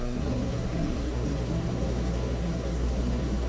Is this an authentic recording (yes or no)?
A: no